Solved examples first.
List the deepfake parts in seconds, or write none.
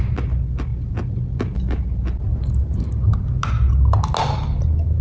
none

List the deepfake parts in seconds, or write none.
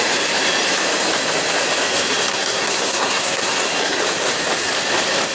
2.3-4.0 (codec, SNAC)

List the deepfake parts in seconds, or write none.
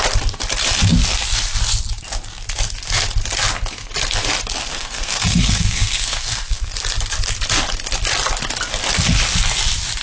4.6-6.7 (codec, SNAC)